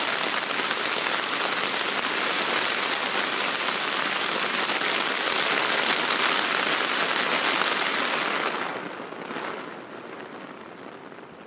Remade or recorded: recorded